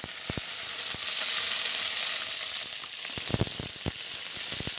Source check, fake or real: real